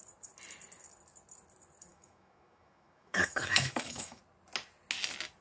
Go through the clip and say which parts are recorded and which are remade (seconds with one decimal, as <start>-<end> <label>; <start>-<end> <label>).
0.0-1.9 recorded; 1.9-4.2 remade; 4.2-5.4 recorded